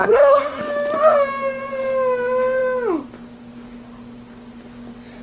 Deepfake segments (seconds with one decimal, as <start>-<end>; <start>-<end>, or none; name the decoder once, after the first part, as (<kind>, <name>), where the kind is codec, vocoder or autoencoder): 0.0-0.6 (codec, SNAC)